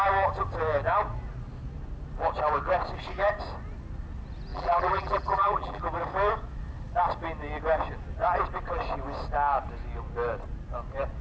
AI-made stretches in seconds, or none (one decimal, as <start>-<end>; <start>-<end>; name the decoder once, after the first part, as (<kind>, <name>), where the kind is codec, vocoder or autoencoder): 4.5-5.8 (vocoder, BigVGAN v2)